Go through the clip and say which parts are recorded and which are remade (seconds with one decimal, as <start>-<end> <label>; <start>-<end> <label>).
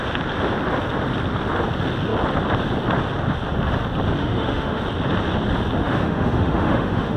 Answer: 0.0-4.2 recorded; 4.2-4.8 remade; 4.8-5.8 recorded; 5.8-7.2 remade